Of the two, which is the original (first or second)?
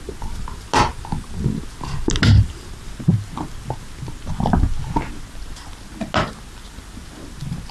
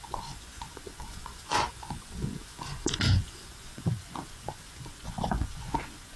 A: first